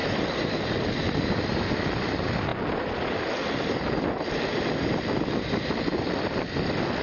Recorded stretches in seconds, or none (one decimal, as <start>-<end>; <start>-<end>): 0.0-7.0